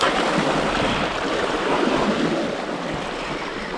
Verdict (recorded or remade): recorded